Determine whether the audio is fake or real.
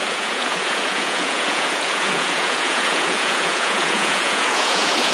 fake